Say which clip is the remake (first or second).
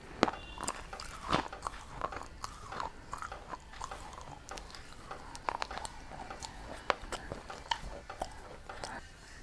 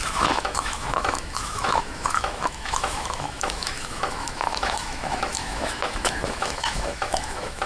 second